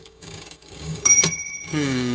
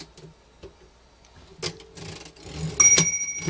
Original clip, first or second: second